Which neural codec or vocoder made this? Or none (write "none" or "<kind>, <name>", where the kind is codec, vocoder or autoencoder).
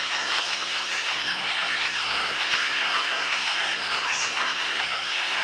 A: codec, SNAC